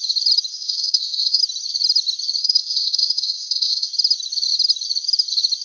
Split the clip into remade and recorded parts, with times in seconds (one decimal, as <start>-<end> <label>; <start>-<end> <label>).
0.0-0.5 recorded; 0.5-1.4 remade; 1.4-2.4 recorded; 2.4-3.9 remade; 3.9-5.6 recorded